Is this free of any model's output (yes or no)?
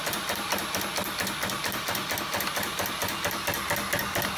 yes